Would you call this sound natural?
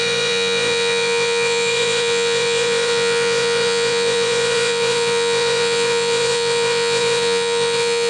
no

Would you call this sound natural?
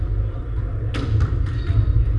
yes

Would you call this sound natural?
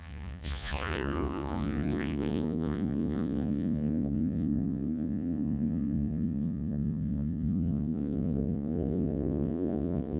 no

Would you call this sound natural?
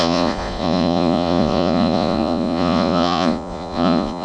no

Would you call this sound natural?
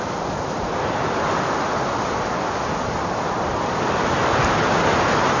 yes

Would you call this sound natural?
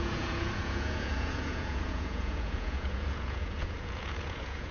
no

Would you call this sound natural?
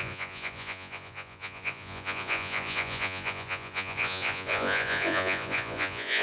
no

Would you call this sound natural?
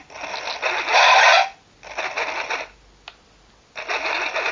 yes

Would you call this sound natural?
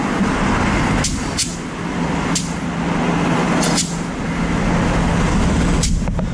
yes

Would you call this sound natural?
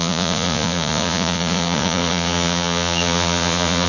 no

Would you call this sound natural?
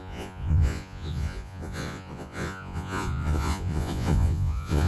no